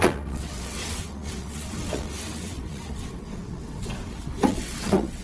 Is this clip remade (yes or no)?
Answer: yes